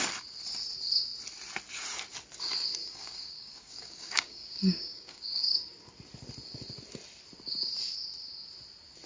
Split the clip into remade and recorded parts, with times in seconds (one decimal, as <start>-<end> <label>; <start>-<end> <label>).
0.0-2.8 recorded; 2.8-5.5 remade; 5.5-9.1 recorded